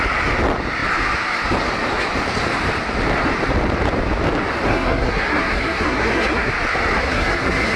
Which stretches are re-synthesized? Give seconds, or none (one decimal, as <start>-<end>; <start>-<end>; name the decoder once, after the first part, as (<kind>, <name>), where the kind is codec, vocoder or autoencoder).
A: 4.7-6.5 (codec, SNAC); 7.0-7.8